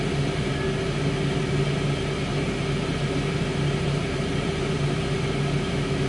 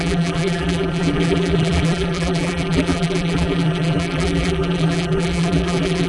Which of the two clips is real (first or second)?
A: first